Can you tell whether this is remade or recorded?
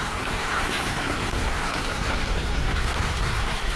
remade